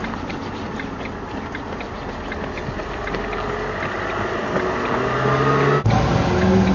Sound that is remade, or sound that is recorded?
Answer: recorded